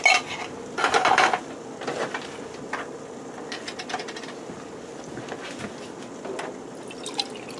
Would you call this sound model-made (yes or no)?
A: no